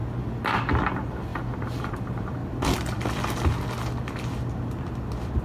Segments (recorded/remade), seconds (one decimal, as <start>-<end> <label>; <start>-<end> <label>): 0.0-0.6 recorded; 0.6-2.4 remade; 2.4-5.4 recorded